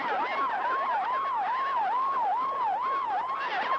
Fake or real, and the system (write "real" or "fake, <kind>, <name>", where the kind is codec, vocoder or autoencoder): real